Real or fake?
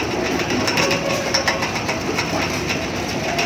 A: fake